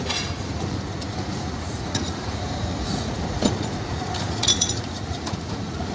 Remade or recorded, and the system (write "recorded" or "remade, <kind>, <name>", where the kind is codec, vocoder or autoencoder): remade, vocoder, Vocos